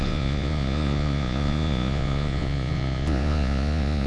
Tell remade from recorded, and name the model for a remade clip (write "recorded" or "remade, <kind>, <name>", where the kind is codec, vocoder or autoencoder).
remade, vocoder, Vocos